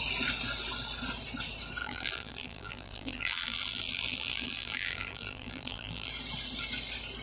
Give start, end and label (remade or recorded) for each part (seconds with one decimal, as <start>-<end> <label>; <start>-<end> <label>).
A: 0.0-1.8 recorded; 1.8-6.1 remade; 6.1-7.2 recorded